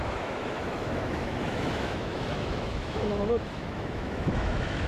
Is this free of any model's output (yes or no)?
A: no